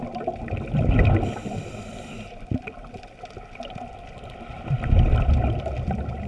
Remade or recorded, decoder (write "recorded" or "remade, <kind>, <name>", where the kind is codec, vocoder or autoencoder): recorded